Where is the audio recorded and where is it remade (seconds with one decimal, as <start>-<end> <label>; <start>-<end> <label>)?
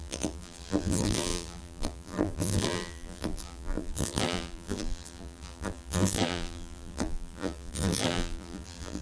0.0-9.0 remade